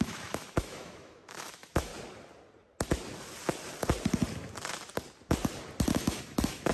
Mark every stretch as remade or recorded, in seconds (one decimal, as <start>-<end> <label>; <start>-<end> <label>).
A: 0.0-1.9 remade; 1.9-5.9 recorded; 5.9-6.7 remade